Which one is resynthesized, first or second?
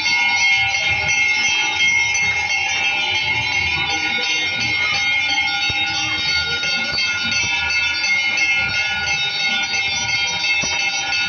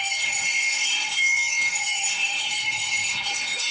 second